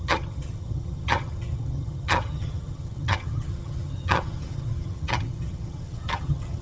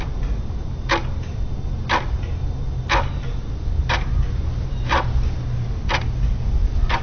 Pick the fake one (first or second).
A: first